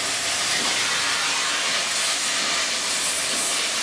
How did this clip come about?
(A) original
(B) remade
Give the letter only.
A